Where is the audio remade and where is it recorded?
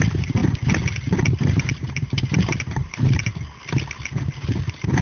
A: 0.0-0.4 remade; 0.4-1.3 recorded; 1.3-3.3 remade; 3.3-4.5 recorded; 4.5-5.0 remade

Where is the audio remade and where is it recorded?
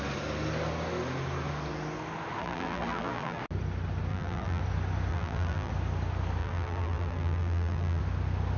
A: 0.0-2.4 recorded; 2.4-3.4 remade; 3.4-4.1 recorded; 4.1-4.6 remade; 4.6-5.1 recorded; 5.1-5.7 remade; 5.7-6.4 recorded; 6.4-8.0 remade; 8.0-8.6 recorded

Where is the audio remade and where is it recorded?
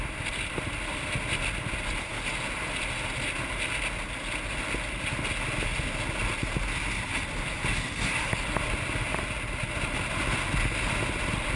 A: 0.0-11.6 recorded